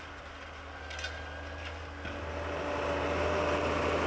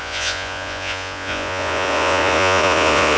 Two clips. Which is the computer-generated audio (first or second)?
second